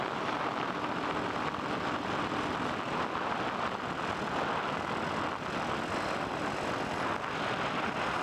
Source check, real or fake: real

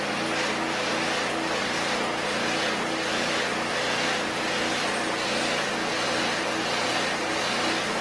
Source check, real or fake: real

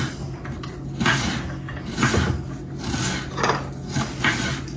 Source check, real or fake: real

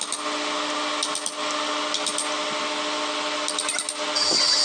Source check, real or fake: real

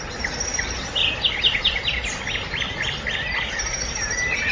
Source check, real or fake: real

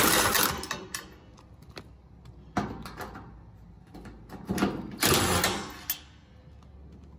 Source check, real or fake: real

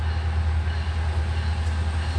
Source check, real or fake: real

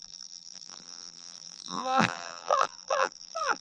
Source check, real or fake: fake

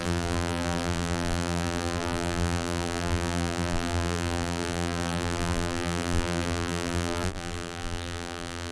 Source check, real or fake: fake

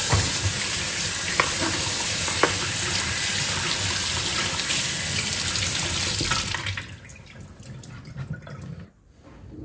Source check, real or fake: real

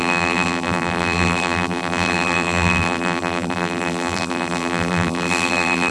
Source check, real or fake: fake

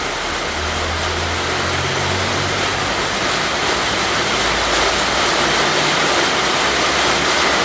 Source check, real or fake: real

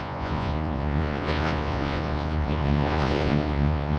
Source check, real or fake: fake